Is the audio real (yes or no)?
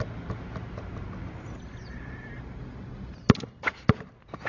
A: yes